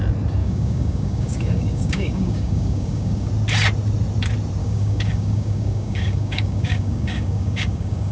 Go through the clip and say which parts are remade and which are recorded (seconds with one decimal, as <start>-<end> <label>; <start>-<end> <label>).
0.0-0.4 recorded; 0.4-3.3 remade; 3.3-4.6 recorded; 4.6-8.1 remade